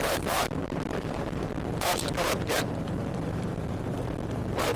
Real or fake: fake